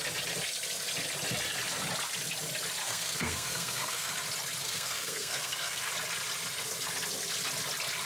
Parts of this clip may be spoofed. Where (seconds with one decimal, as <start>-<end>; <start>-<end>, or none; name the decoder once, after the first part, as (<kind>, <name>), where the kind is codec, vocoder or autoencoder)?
2.8-4.1 (codec, SNAC); 4.6-5.9